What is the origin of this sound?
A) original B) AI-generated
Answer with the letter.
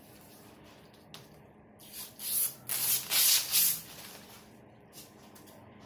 A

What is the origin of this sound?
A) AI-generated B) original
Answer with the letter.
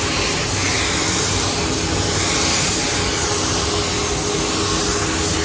B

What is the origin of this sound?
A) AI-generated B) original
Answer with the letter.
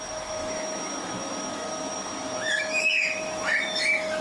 A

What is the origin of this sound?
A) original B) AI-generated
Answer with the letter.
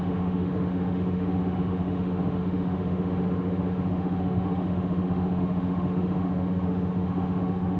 B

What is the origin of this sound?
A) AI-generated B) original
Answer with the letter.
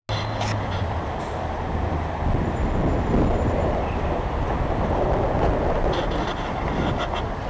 B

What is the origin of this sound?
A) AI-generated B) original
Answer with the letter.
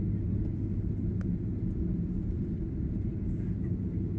B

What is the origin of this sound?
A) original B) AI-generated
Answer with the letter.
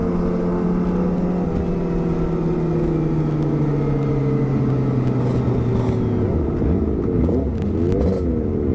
A